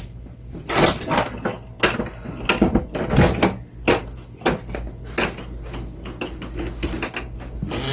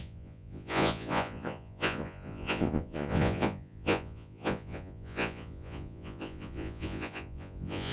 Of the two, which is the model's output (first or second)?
second